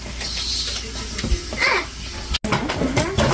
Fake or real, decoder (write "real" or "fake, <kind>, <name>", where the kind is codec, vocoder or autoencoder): real